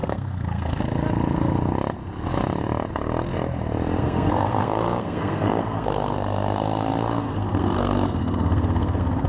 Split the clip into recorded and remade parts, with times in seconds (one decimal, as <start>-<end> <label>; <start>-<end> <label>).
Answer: 0.0-0.8 remade; 0.8-4.0 recorded; 4.0-9.3 remade